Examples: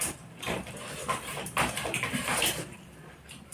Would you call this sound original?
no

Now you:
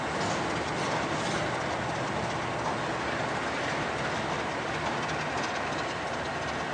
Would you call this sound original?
yes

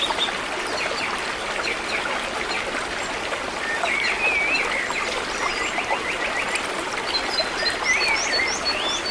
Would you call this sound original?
yes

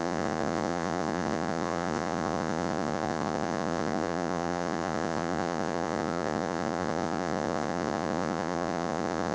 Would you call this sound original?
no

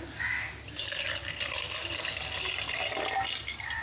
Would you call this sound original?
yes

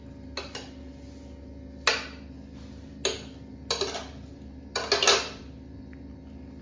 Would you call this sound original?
yes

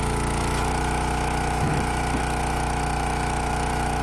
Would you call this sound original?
no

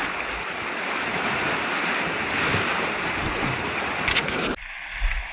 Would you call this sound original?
yes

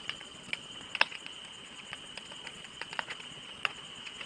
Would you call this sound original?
no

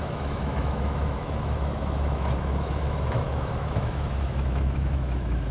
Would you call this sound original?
no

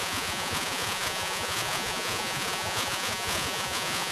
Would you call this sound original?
no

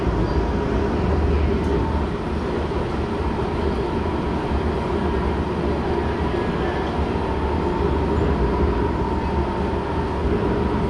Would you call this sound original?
yes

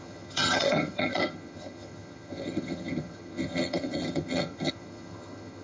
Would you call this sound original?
no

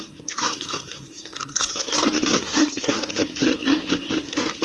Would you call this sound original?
no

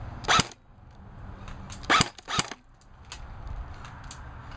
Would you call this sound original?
yes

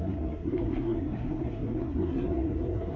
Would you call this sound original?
no